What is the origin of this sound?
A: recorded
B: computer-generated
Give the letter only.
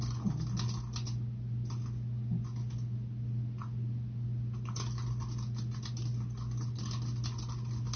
A